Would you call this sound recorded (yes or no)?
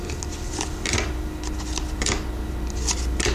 yes